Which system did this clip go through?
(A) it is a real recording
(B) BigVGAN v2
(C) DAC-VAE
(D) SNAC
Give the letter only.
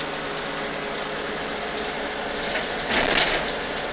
A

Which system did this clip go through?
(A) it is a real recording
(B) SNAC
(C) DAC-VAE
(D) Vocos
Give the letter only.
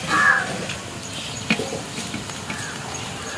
A